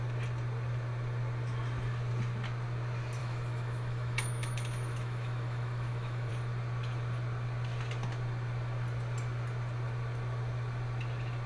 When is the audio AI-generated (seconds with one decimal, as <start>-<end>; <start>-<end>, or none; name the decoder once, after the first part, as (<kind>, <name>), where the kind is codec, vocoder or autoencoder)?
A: 3.2-6.3 (autoencoder, DAC-VAE)